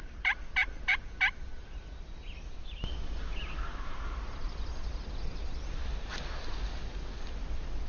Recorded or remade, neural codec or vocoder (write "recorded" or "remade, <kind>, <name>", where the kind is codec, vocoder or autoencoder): recorded